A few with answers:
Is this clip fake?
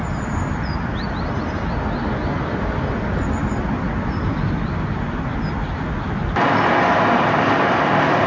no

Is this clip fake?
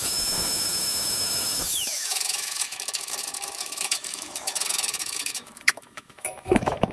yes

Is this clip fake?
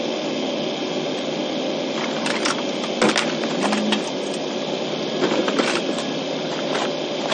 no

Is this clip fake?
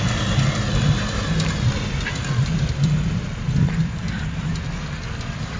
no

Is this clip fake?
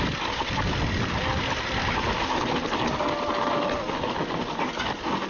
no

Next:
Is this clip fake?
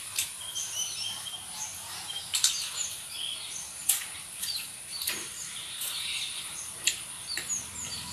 yes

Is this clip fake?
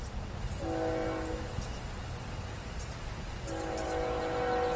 no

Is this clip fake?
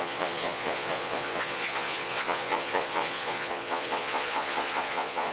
yes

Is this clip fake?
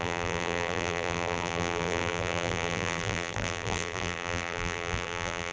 yes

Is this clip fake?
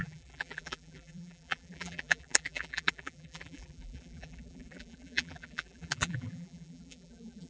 yes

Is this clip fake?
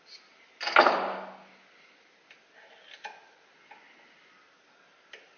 no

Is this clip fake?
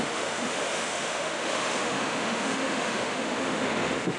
yes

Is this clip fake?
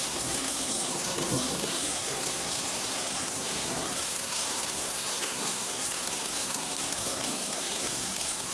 yes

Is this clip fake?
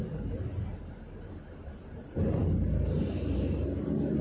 no